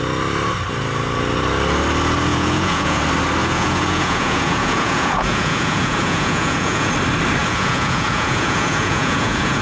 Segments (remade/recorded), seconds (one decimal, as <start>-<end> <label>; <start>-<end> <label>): 0.0-2.3 recorded; 2.3-3.0 remade; 3.0-3.4 recorded; 3.4-6.9 remade; 6.9-7.4 recorded; 7.4-9.6 remade